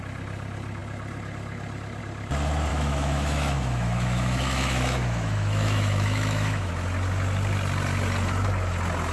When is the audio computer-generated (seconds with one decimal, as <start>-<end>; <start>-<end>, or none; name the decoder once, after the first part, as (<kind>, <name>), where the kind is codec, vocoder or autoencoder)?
2.7-6.7 (autoencoder, DAC-VAE)